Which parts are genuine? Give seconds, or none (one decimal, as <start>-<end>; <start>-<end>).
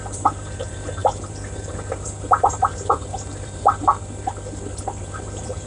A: 3.9-5.0